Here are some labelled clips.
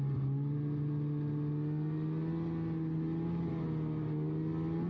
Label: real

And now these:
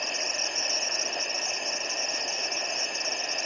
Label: real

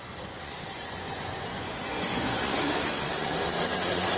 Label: fake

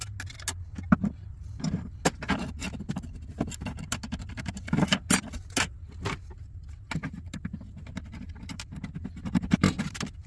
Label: real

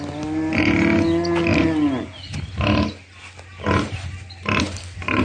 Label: real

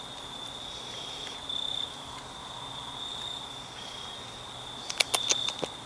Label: real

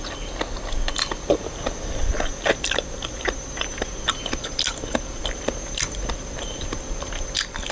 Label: real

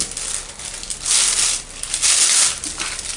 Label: real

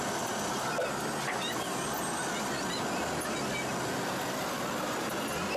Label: real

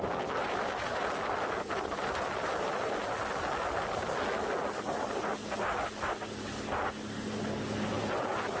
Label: real